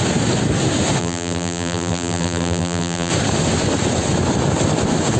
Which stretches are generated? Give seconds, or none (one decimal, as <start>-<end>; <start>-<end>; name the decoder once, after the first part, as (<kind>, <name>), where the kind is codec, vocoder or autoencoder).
1.0-3.1 (vocoder, BigVGAN v2)